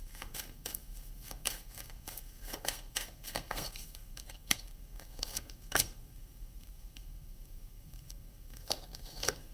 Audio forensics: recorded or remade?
remade